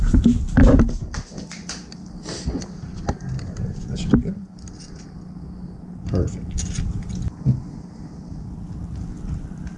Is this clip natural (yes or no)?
yes